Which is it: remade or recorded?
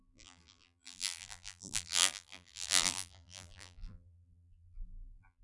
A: remade